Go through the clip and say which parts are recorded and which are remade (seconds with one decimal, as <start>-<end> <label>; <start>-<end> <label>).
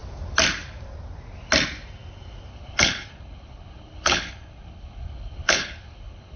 0.0-2.5 recorded; 2.5-6.4 remade